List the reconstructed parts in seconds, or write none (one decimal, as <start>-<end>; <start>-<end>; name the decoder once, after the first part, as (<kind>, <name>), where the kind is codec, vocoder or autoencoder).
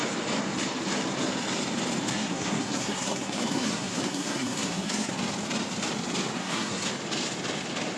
2.1-5.1 (codec, SNAC); 6.4-6.9